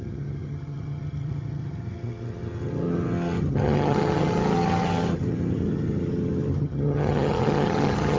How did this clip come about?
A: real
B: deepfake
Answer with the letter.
B